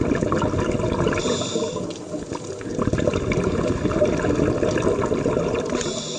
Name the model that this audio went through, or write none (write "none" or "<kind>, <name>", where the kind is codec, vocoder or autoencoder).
none